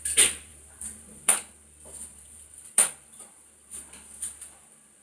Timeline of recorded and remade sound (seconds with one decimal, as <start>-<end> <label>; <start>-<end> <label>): 0.0-0.5 recorded; 0.5-1.3 remade; 1.3-2.1 recorded; 2.1-3.8 remade; 3.8-5.0 recorded